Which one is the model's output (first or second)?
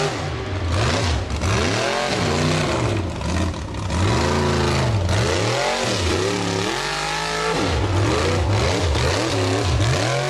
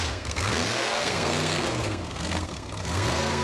second